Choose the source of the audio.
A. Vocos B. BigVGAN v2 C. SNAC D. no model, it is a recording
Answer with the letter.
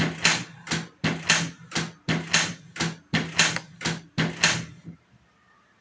D